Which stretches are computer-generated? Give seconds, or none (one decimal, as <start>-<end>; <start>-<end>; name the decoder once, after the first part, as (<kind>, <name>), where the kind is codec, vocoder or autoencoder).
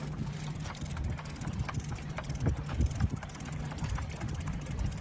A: 0.9-3.6 (vocoder, BigVGAN v2)